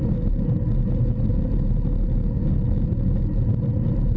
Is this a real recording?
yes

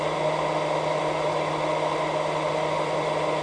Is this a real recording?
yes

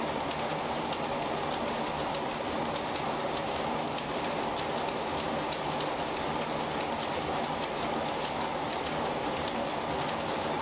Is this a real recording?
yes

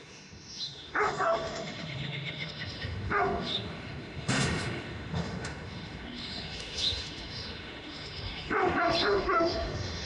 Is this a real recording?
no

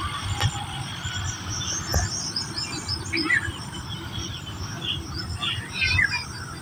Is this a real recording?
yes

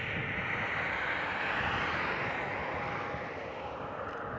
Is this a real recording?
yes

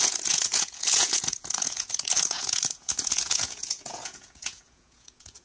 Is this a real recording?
no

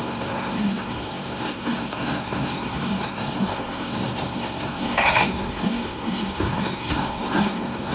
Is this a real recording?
no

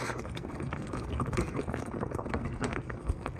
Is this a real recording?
no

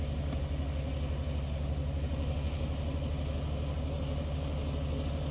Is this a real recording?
yes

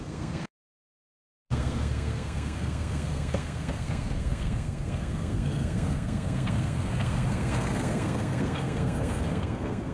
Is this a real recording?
no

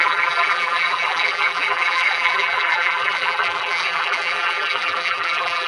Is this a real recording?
no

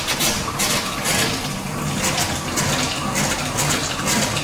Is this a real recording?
yes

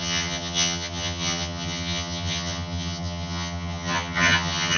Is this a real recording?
no